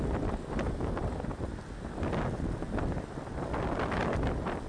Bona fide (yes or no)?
yes